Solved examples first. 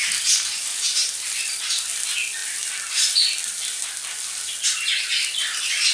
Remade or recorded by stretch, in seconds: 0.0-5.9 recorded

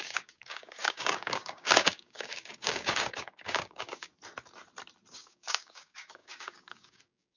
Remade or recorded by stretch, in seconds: 0.0-4.1 remade; 4.1-5.1 recorded; 5.1-7.4 remade

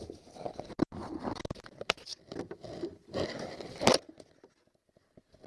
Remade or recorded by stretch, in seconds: 0.0-5.5 recorded